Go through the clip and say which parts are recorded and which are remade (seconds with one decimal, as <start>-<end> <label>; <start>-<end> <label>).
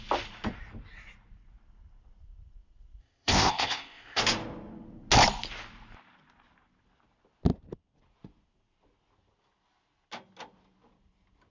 0.0-3.0 recorded; 3.0-4.2 remade; 4.2-11.5 recorded